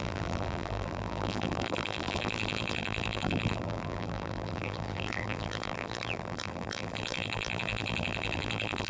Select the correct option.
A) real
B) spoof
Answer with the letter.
B